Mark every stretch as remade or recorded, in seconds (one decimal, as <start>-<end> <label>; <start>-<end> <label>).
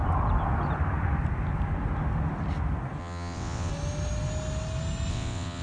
0.0-3.0 recorded; 3.0-3.7 remade; 3.7-5.1 recorded; 5.1-5.6 remade